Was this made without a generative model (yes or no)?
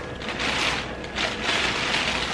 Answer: yes